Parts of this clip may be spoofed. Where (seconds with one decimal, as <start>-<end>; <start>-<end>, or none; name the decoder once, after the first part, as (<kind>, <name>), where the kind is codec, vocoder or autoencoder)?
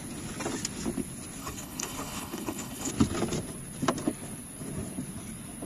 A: 1.4-2.9 (codec, HILCodec)